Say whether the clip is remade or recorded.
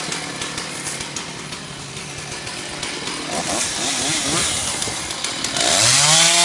recorded